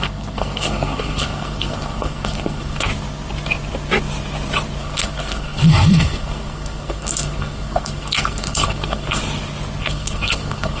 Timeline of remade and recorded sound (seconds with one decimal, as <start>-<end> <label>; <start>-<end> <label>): 0.0-2.9 remade; 2.9-4.8 recorded; 4.8-9.2 remade; 9.2-9.8 recorded; 9.8-10.8 remade